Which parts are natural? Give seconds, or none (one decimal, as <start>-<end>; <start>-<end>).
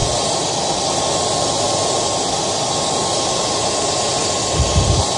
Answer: 0.0-5.2